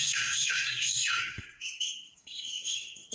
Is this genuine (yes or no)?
no